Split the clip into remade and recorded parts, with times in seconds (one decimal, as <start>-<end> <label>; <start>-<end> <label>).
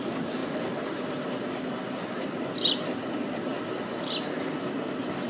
0.0-5.3 recorded